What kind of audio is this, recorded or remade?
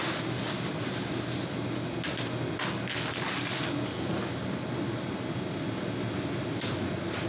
recorded